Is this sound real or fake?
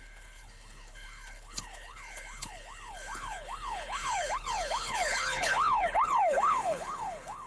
fake